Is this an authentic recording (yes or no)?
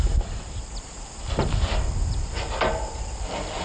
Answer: no